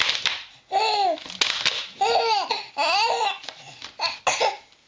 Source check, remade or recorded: recorded